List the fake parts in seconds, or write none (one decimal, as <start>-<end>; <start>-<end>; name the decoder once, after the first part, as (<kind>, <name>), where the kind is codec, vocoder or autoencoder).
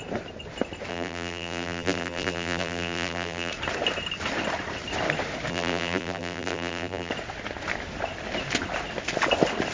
0.9-3.5 (vocoder, BigVGAN v2); 5.5-7.1